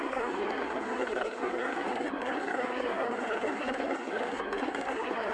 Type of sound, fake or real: fake